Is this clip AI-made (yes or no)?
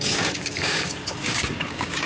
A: yes